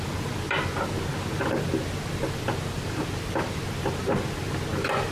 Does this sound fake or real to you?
real